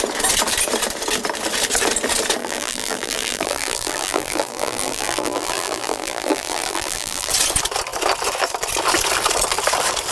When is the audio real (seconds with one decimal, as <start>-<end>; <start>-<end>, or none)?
0.0-2.4; 7.3-10.1